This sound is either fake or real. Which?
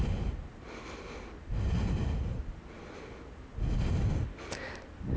real